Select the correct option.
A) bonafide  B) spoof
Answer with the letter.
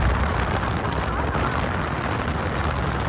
A